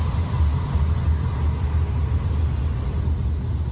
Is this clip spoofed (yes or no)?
no